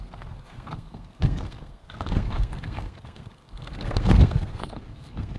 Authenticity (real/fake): fake